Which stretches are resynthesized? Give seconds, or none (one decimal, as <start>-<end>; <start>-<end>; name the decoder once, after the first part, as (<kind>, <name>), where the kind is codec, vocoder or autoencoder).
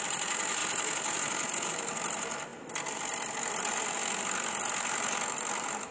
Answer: 0.0-0.6 (vocoder, BigVGAN v2); 1.7-2.5; 4.2-5.9